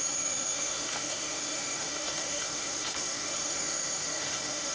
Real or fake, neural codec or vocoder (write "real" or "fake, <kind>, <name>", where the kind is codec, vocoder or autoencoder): fake, autoencoder, DAC-VAE